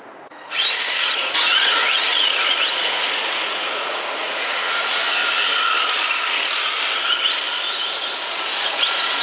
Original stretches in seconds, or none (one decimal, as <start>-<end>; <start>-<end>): 5.2-7.7